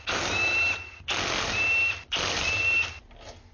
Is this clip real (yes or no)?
yes